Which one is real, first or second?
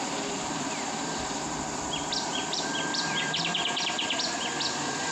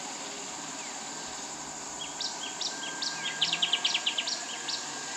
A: second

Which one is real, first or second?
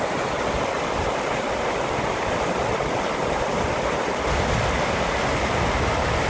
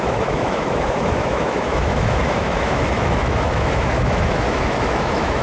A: first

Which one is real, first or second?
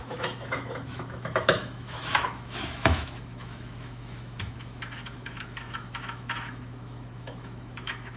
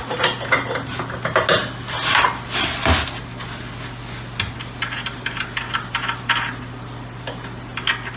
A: second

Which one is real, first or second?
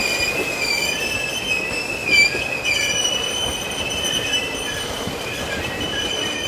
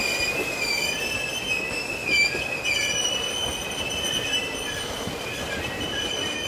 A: second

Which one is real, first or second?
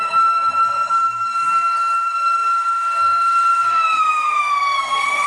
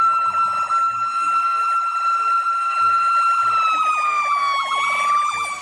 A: second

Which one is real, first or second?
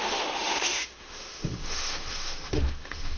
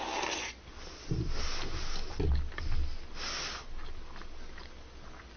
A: second